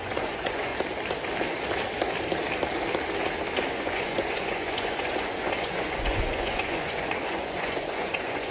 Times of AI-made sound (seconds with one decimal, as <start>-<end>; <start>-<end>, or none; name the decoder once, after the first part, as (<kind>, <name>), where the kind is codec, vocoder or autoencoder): 0.0-0.7 (vocoder, Vocos); 3.7-8.5